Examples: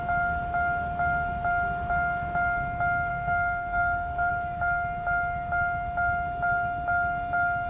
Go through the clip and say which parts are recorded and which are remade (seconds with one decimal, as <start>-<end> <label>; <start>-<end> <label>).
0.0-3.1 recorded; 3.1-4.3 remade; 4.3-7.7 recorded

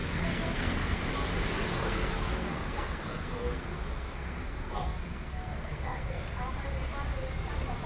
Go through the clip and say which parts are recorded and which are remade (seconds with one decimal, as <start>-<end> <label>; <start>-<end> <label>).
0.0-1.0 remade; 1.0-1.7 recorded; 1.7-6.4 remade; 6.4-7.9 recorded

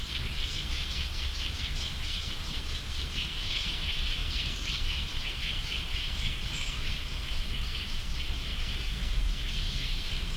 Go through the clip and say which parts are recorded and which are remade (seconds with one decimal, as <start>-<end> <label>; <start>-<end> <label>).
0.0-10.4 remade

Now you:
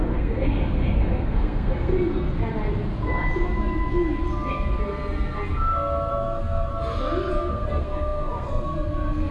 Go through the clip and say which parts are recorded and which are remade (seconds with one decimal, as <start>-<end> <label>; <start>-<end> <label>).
0.0-1.9 remade; 1.9-6.1 recorded; 6.1-6.7 remade; 6.7-7.3 recorded; 7.3-9.3 remade